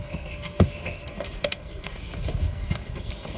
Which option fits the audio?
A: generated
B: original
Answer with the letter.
A